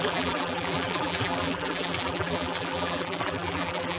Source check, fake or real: fake